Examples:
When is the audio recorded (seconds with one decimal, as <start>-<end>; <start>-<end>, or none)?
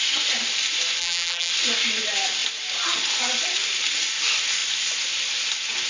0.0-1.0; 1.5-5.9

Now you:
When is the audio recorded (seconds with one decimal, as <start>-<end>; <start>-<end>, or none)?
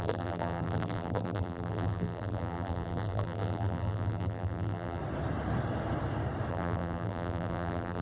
5.0-6.5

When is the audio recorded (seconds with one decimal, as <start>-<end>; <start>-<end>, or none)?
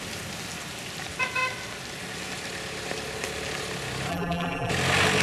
0.0-4.1; 4.7-5.2